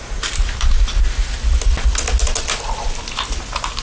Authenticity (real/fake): real